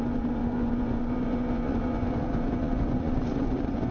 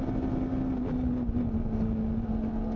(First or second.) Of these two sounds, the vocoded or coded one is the first